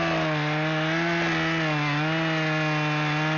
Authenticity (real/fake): real